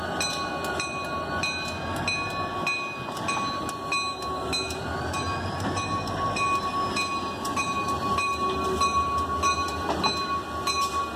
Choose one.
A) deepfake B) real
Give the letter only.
B